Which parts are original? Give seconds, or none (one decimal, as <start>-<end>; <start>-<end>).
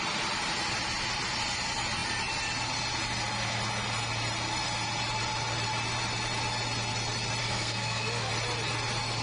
0.0-7.4; 8.3-9.2